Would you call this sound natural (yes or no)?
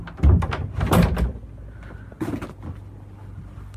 yes